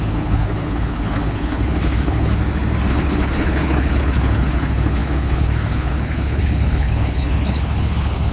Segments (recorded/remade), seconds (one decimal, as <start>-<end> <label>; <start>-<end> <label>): 0.0-2.4 remade; 2.4-2.9 recorded; 2.9-8.3 remade